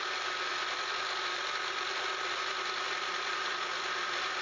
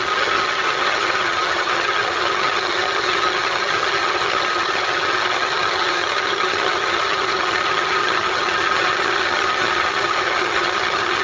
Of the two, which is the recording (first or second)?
first